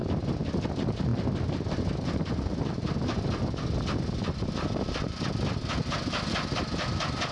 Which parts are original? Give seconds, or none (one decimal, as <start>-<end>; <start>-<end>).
0.0-7.3